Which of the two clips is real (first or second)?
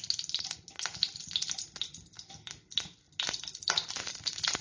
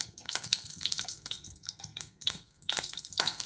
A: first